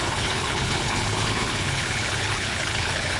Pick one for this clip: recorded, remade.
remade